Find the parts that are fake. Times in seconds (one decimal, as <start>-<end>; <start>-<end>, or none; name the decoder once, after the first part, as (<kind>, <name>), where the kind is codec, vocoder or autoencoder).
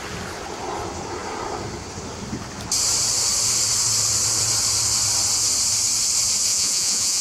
6.5-7.2 (vocoder, Vocos)